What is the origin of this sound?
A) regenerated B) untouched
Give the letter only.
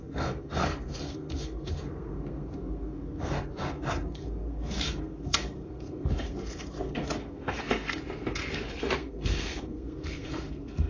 A